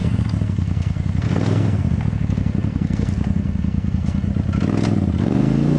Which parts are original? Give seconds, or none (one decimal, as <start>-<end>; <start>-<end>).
4.3-5.2